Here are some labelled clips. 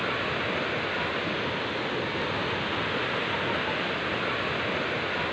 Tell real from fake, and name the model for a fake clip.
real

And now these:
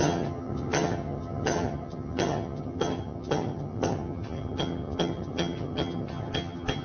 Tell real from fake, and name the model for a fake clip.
fake, vocoder, HiFi-GAN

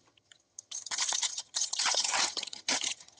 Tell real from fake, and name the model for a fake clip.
fake, vocoder, HiFi-GAN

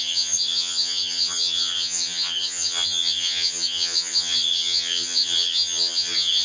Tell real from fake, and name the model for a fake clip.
fake, vocoder, HiFi-GAN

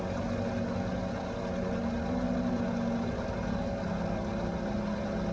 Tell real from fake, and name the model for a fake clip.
real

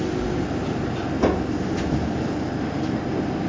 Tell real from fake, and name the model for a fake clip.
real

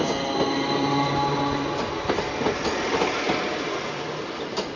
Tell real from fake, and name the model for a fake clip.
real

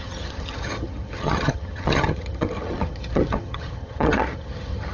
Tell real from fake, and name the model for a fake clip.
fake, vocoder, HiFi-GAN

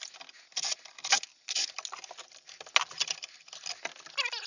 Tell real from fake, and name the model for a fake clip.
real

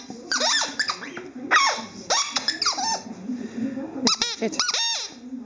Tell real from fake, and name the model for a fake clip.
real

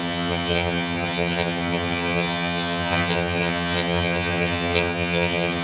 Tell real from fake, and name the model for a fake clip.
fake, vocoder, HiFi-GAN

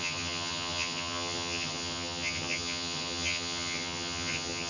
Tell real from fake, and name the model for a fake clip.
fake, vocoder, HiFi-GAN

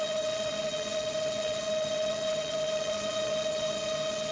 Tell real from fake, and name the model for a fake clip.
fake, vocoder, HiFi-GAN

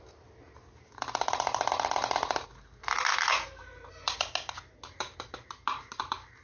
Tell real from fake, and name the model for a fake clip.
real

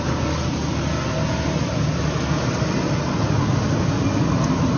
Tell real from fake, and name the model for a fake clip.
real